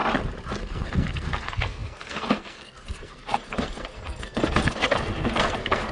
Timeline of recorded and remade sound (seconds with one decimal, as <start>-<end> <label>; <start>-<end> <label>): 0.0-0.6 recorded; 0.6-5.9 remade